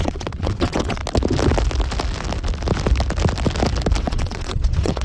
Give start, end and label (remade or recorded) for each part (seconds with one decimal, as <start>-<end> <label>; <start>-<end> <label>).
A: 0.0-1.0 remade; 1.0-4.0 recorded; 4.0-5.0 remade